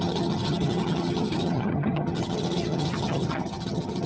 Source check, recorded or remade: remade